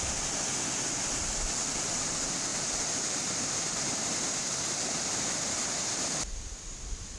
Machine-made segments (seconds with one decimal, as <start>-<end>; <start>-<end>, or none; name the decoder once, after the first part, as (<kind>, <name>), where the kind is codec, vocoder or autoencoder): 2.5-5.0 (vocoder, BigVGAN v2)